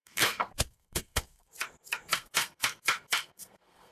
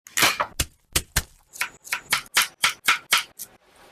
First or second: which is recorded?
second